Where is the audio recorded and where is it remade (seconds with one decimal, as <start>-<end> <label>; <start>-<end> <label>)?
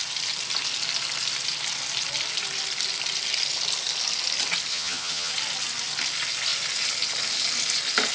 0.0-4.7 recorded; 4.7-5.3 remade; 5.3-8.1 recorded